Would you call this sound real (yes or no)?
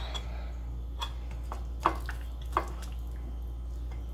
yes